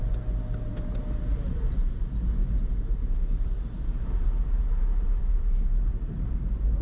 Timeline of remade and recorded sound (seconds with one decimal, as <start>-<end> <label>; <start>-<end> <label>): 0.0-2.4 recorded; 2.4-6.8 remade

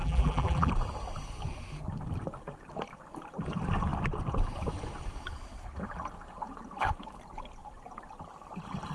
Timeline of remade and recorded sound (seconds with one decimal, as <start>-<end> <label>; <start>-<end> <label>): 0.0-0.7 remade; 0.7-8.9 recorded

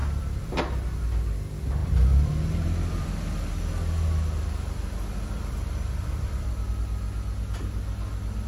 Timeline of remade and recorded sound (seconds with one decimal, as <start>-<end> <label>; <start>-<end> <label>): 0.0-0.6 remade; 0.6-1.8 recorded; 1.8-6.5 remade; 6.5-8.5 recorded

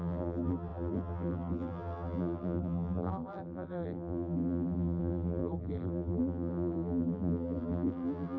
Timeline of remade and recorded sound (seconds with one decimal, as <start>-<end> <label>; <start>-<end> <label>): 0.0-8.4 remade

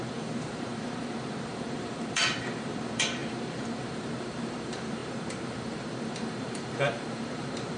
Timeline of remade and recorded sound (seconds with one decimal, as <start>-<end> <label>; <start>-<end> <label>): 0.0-7.8 remade